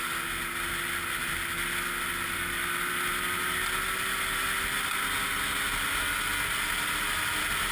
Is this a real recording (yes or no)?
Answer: yes